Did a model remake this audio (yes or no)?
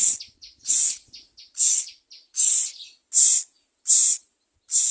no